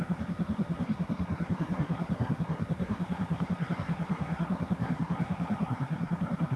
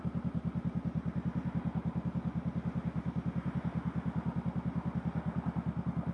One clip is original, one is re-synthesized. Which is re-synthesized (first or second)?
first